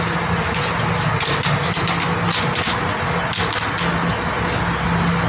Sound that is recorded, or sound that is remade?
recorded